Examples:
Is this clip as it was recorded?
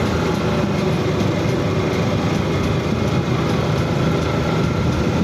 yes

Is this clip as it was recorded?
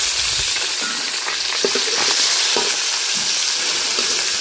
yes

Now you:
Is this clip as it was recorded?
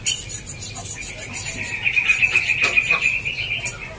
yes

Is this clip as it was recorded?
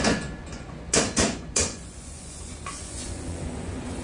no